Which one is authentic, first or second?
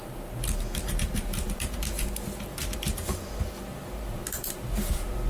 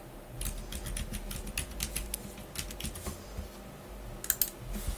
second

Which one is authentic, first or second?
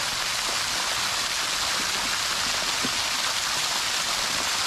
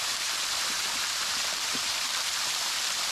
first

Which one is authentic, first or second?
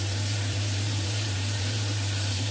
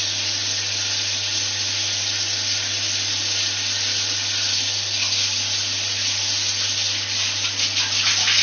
second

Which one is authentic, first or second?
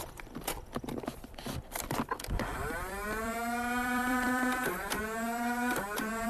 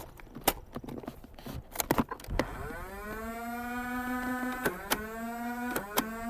second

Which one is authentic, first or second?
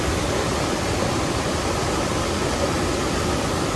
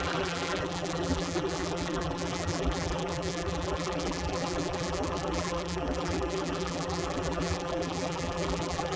first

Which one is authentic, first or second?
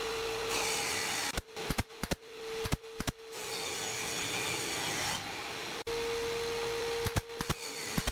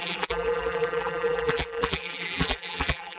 first